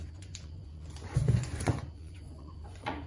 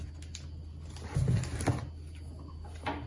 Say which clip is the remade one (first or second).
first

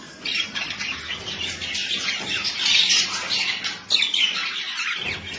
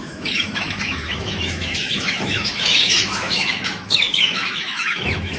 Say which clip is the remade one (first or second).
second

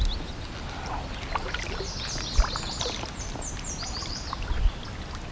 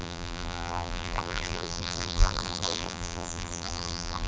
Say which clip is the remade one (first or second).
second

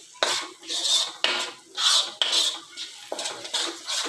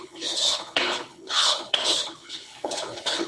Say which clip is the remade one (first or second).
second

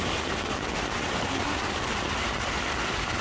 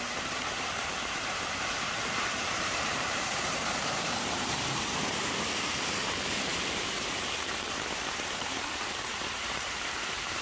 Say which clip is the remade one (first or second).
second